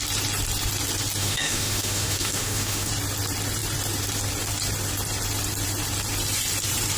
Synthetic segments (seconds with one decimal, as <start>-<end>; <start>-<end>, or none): 1.2-2.9